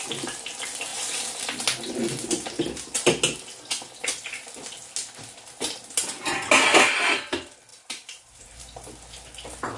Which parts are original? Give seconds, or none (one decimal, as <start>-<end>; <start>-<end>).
0.0-0.9; 1.6-7.7; 8.6-9.8